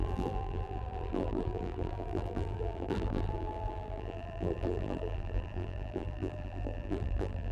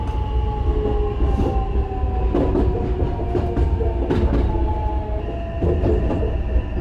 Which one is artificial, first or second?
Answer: first